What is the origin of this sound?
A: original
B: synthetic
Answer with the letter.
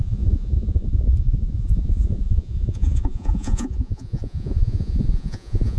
B